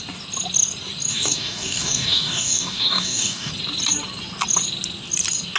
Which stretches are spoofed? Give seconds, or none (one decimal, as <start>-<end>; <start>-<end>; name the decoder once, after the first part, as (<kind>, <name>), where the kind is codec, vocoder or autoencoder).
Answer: 1.1-3.5 (codec, DAC)